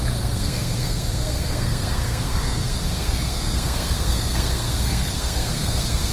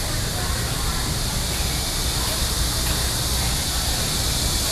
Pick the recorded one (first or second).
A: second